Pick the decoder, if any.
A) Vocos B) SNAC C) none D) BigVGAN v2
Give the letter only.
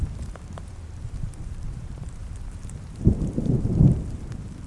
D